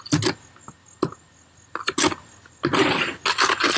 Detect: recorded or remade recorded